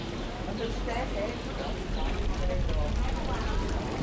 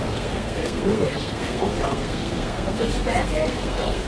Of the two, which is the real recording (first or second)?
first